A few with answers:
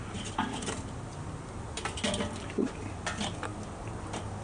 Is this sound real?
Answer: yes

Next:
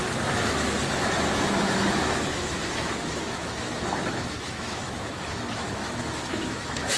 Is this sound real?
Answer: no